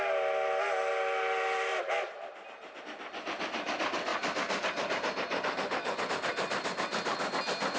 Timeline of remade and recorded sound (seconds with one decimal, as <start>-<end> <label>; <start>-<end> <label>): 0.0-1.7 recorded; 1.7-2.8 remade; 2.8-4.1 recorded; 4.1-6.0 remade; 6.0-7.8 recorded